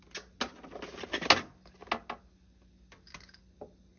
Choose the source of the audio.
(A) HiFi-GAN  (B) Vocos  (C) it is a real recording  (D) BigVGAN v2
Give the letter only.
C